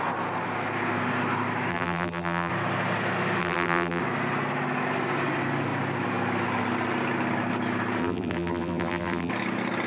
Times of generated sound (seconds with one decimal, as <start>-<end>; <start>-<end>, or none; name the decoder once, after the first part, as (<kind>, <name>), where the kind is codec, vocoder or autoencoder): 1.7-2.5 (vocoder, BigVGAN v2); 3.4-4.0; 8.0-9.3